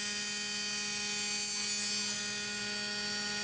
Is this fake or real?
real